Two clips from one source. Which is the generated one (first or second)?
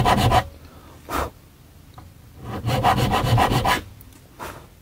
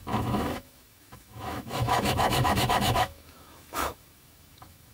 second